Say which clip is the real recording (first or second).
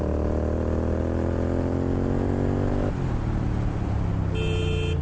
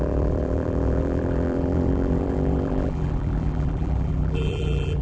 first